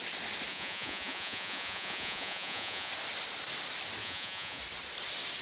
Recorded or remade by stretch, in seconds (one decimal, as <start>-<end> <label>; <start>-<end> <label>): 0.0-0.5 recorded; 0.5-2.9 remade; 2.9-4.0 recorded; 4.0-4.6 remade; 4.6-5.4 recorded